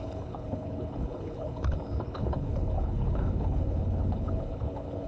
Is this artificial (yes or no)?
yes